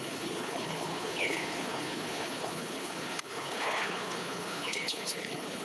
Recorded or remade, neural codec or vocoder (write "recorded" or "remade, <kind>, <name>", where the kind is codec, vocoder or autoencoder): remade, codec, HILCodec